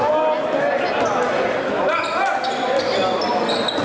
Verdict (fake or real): real